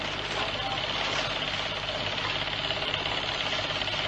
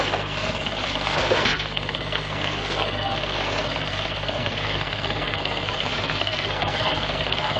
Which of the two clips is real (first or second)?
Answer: first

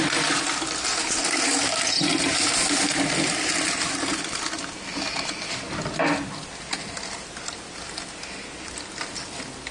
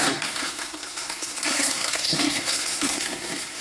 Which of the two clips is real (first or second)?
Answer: first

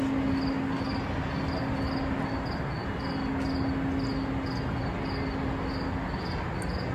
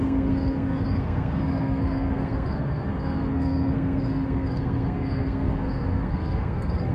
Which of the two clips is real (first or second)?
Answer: first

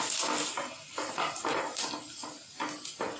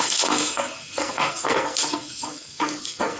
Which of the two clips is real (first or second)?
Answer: first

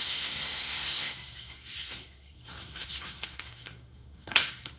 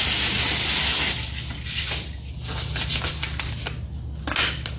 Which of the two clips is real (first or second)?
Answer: second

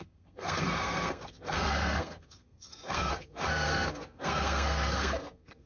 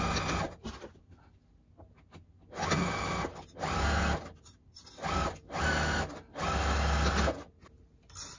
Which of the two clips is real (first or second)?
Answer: second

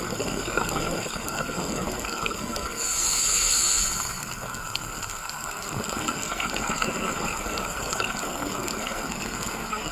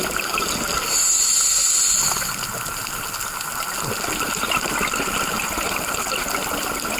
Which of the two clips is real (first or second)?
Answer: second